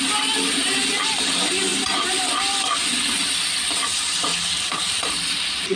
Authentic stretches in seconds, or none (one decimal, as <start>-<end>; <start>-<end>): 0.0-4.3; 5.1-5.8